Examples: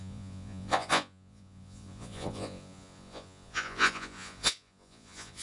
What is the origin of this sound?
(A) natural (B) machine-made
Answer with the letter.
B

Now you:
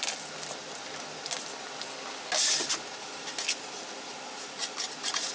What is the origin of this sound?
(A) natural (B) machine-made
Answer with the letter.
A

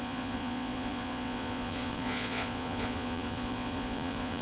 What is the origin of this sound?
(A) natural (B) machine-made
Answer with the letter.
B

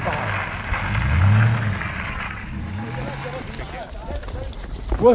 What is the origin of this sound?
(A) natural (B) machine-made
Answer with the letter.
A